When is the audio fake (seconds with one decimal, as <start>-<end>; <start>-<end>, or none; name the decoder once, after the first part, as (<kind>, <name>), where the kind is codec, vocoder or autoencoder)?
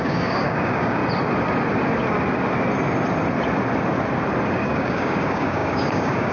0.0-1.0 (codec, DAC); 4.5-6.3